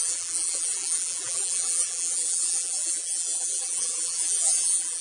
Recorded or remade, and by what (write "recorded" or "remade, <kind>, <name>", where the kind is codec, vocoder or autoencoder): remade, vocoder, BigVGAN v2